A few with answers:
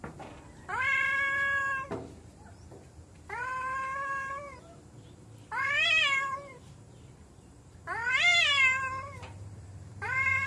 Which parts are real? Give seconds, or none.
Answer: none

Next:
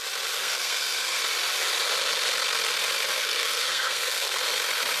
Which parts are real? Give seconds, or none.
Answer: 0.0-0.4; 1.2-3.2; 4.4-5.0

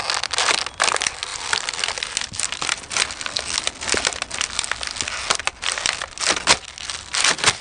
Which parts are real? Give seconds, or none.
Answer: 0.0-7.6

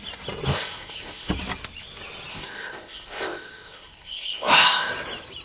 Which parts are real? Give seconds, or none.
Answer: 0.0-0.5; 1.3-2.3; 4.9-5.4

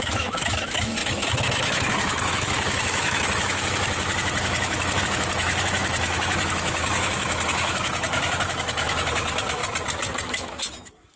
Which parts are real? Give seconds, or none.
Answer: 9.6-10.2

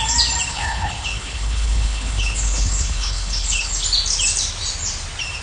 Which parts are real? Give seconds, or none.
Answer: 0.0-0.5; 3.7-5.4